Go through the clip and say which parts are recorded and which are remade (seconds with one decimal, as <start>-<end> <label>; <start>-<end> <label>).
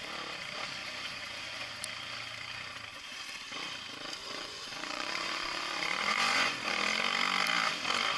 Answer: 0.0-0.8 recorded; 0.8-1.8 remade; 1.8-2.9 recorded; 2.9-3.5 remade; 3.5-4.2 recorded; 4.2-6.7 remade; 6.7-8.2 recorded